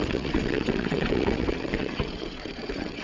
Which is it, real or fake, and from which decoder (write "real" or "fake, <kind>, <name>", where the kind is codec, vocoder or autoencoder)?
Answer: fake, vocoder, WaveNeXt